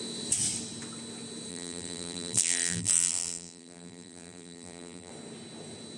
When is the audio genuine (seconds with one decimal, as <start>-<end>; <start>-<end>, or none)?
0.0-1.5; 5.1-6.0